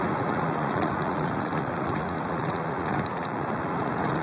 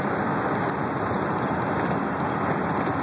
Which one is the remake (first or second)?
first